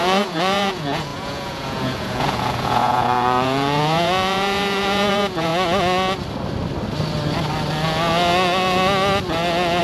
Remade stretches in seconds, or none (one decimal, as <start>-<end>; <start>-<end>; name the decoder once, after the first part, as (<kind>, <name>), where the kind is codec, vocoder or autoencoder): 0.0-5.5 (vocoder, Vocos)